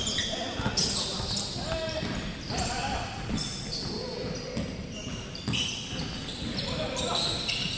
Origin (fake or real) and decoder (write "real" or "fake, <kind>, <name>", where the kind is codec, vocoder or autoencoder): real